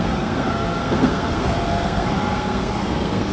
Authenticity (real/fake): fake